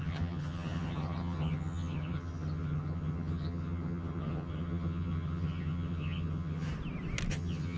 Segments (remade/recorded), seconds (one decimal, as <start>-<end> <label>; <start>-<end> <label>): 0.0-6.7 remade; 6.7-7.3 recorded; 7.3-7.8 remade